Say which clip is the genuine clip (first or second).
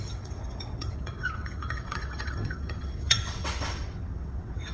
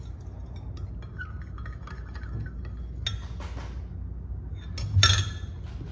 second